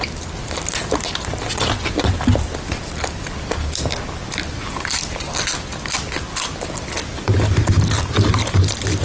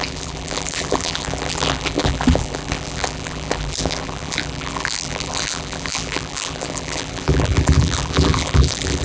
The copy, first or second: second